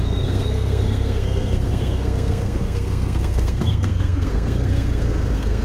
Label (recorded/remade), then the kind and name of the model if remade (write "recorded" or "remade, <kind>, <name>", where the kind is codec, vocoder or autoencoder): remade, codec, SNAC